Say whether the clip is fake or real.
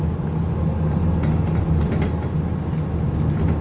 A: real